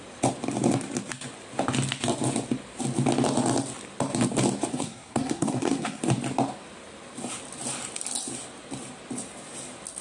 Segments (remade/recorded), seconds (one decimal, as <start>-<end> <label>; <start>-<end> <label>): 0.0-4.7 recorded; 4.7-6.0 remade; 6.0-10.0 recorded

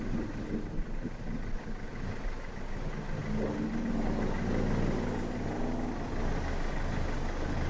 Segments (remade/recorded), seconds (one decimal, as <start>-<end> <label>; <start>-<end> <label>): 0.0-7.7 recorded

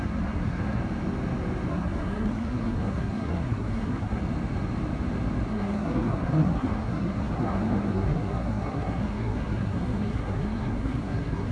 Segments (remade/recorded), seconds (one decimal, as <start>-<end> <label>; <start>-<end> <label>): 0.0-0.8 remade; 0.8-1.7 recorded; 1.7-4.2 remade; 4.2-5.5 recorded; 5.5-11.5 remade

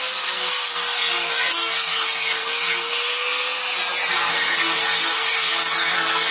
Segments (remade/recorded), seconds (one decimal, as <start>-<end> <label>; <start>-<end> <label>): 0.0-3.6 remade; 3.6-4.1 recorded; 4.1-6.3 remade

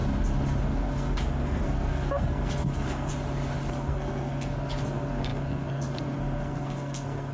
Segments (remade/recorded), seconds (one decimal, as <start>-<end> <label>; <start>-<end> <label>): 0.0-0.6 recorded; 0.6-3.1 remade; 3.1-3.7 recorded; 3.7-7.3 remade

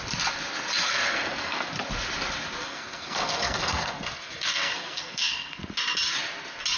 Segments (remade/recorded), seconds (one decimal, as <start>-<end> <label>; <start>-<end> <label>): 0.0-0.8 recorded; 0.8-1.7 remade; 1.7-2.6 recorded; 2.6-5.6 remade; 5.6-6.8 recorded

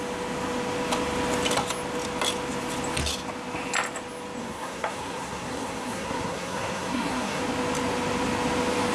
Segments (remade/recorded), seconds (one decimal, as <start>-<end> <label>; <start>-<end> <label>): 0.0-4.4 recorded; 4.4-7.4 remade; 7.4-8.9 recorded

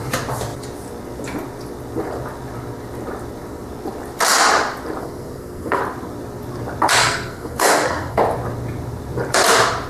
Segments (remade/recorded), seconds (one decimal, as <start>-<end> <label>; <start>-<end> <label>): 0.0-5.0 recorded; 5.0-5.8 remade; 5.8-7.0 recorded; 7.0-8.2 remade; 8.2-9.9 recorded